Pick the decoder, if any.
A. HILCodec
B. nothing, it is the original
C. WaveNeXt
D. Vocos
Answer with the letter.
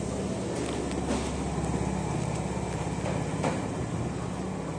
B